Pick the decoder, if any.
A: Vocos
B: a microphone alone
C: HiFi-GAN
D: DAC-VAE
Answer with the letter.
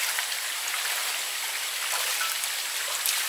B